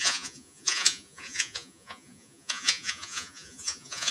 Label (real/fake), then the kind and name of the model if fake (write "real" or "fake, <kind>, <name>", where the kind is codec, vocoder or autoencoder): fake, vocoder, Vocos